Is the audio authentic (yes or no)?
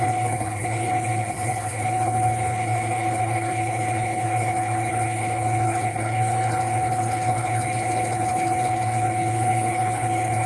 no